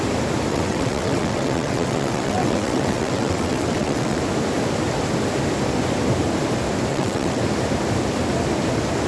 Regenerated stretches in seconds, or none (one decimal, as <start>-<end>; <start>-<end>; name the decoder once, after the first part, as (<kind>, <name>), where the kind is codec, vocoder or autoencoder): 0.5-4.2 (vocoder, WaveNeXt); 6.9-7.4